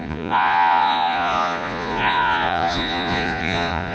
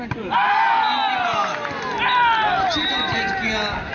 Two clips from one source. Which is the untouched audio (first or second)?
second